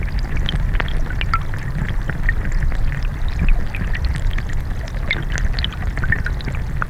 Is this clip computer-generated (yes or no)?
no